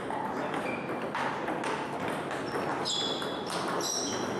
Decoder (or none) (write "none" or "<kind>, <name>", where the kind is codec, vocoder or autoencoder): none